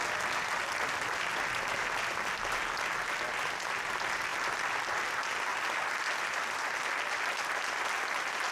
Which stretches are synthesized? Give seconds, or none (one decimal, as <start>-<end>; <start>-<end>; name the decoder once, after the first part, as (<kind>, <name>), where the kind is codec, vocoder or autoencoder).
none